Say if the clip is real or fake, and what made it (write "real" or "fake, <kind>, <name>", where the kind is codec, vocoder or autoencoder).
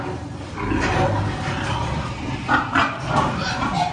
real